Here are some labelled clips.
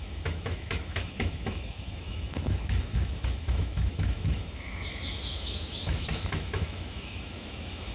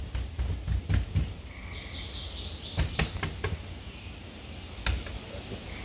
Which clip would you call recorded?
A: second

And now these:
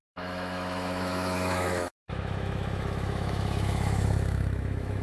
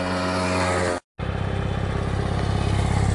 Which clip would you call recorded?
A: second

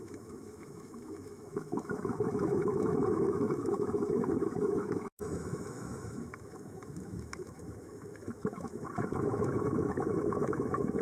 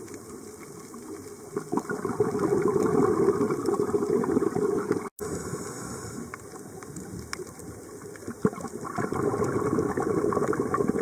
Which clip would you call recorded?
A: second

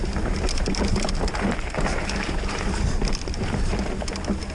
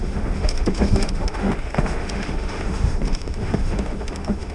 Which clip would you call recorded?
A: first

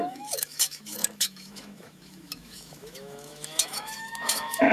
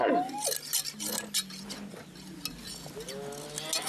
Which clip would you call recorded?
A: second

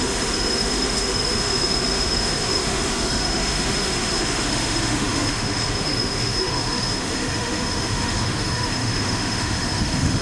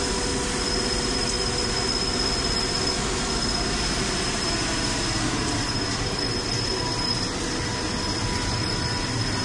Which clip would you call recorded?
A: second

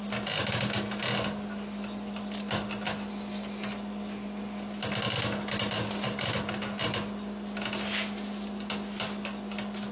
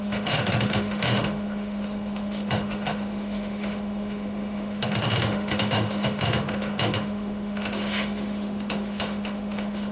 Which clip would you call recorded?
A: first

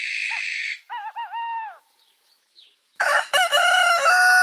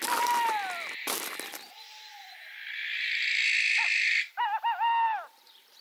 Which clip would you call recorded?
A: second